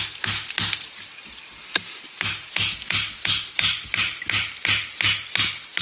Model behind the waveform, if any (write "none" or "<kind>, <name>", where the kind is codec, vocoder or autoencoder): none